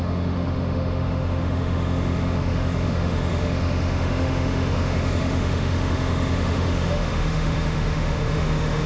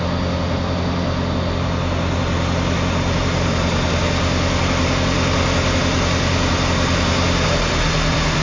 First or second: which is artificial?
first